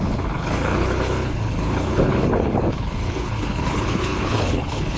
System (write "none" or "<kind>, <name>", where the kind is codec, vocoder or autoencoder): codec, HILCodec